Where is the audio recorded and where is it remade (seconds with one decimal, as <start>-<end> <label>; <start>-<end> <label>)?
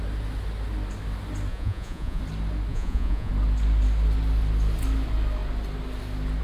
0.0-1.5 recorded; 1.5-2.2 remade; 2.2-2.7 recorded; 2.7-3.3 remade; 3.3-6.4 recorded